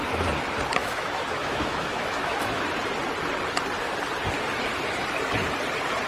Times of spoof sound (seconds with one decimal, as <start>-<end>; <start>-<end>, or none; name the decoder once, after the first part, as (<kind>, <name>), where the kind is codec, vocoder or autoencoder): 0.8-2.6 (autoencoder, DAC-VAE)